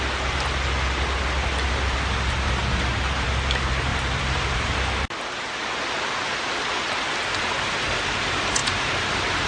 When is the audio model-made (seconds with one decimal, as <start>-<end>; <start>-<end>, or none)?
3.9-4.7